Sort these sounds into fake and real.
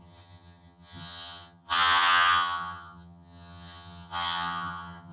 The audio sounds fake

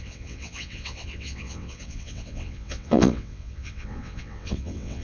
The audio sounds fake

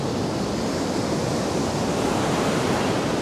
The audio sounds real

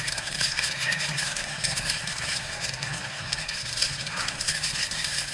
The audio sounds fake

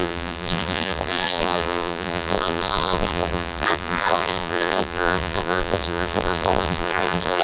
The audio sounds fake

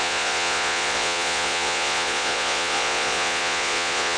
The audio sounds fake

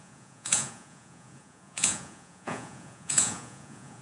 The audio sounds fake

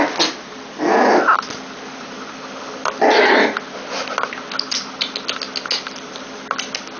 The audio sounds real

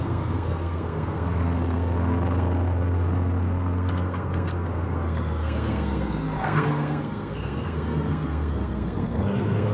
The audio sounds fake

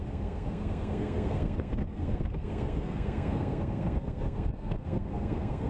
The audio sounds fake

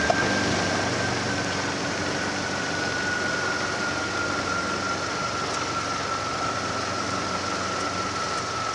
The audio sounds real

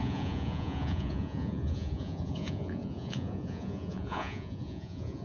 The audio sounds fake